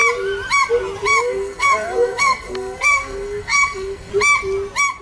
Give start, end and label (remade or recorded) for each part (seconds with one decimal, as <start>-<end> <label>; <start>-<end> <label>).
0.0-1.1 recorded; 1.1-4.1 remade; 4.1-5.0 recorded